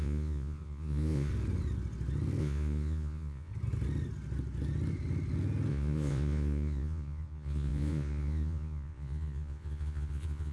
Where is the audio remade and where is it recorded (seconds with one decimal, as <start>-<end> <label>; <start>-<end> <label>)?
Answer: 0.0-1.3 remade; 1.3-2.4 recorded; 2.4-3.5 remade; 3.5-5.7 recorded; 5.7-10.5 remade